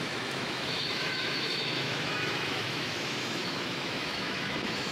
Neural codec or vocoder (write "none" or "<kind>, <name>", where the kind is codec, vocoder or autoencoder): autoencoder, DAC-VAE